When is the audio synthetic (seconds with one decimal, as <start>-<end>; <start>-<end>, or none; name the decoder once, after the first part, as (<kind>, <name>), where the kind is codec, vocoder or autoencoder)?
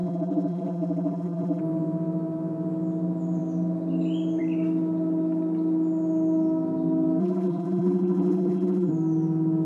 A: 0.0-1.6 (vocoder, BigVGAN v2); 7.2-8.9